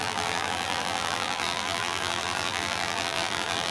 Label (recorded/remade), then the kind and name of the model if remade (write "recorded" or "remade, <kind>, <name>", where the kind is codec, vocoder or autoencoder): remade, vocoder, BigVGAN v2